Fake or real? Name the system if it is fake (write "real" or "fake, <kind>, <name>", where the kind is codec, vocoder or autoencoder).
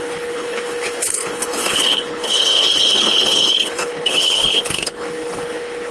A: fake, codec, HILCodec